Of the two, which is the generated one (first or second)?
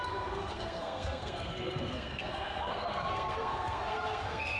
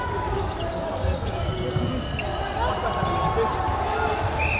first